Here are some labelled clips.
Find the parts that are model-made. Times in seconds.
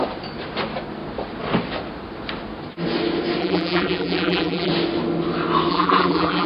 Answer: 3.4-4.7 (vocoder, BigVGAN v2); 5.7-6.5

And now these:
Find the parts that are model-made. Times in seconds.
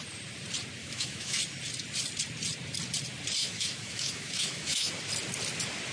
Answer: 0.8-1.4 (autoencoder, DAC-VAE); 3.4-4.9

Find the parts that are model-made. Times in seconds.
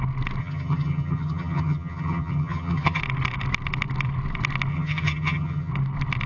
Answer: 0.4-3.0 (vocoder, HiFi-GAN); 4.7-5.7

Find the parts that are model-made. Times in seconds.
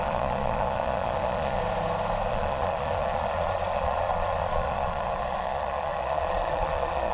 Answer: 0.0-1.6 (vocoder, Vocos); 2.3-7.1